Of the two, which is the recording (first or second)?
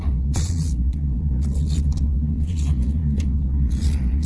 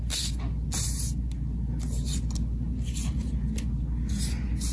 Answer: second